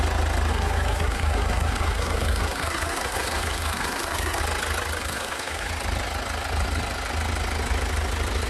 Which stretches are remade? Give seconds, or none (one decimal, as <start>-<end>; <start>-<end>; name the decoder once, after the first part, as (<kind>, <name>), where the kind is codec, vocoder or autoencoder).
0.5-4.4 (codec, SNAC); 5.0-5.7